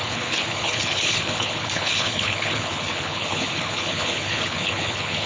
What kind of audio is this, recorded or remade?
remade